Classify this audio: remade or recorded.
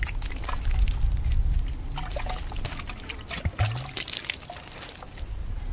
recorded